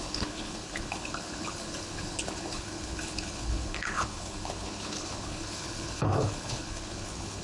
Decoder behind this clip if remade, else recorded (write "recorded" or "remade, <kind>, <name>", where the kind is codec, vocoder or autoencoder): remade, codec, HILCodec